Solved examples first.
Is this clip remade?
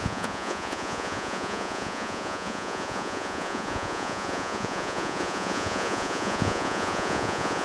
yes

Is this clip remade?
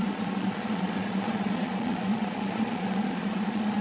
yes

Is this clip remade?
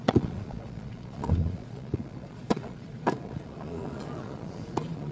yes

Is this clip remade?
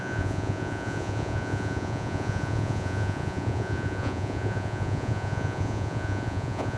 yes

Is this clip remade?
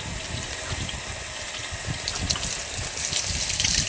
no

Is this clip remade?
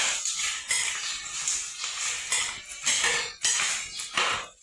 no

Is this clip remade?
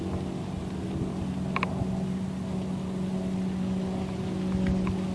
no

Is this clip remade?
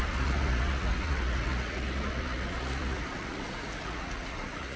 yes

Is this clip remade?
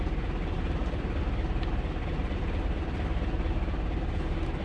no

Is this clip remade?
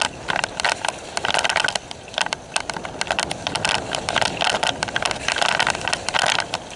no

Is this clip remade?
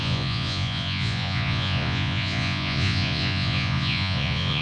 yes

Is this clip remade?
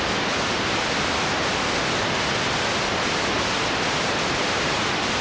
no